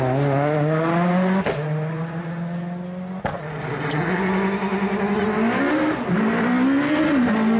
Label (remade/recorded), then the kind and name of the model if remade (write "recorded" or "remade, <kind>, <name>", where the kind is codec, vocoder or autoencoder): recorded